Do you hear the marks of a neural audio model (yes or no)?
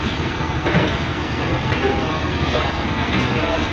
yes